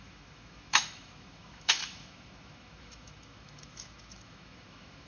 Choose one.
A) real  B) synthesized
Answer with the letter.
B